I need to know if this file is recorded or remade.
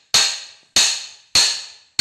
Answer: recorded